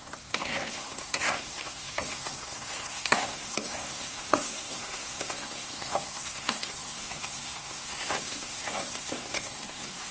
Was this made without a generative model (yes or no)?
no